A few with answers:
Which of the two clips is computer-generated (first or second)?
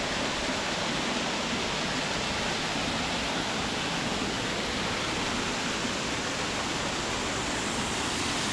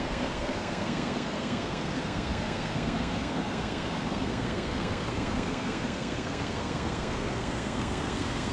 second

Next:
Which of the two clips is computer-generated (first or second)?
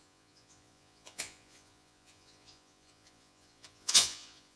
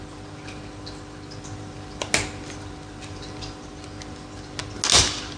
first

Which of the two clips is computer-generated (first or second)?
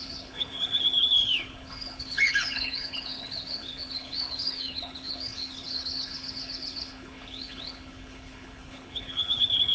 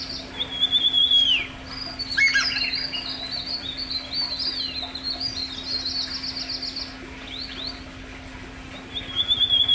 first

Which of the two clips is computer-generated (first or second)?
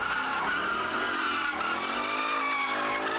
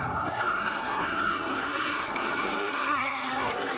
second